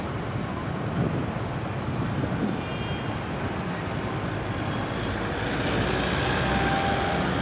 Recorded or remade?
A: recorded